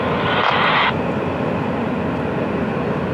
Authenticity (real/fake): real